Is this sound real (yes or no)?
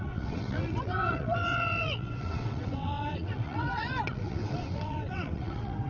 no